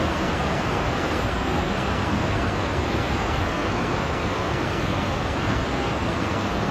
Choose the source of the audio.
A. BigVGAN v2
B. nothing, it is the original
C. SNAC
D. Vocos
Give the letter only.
C